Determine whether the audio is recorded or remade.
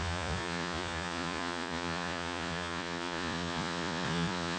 remade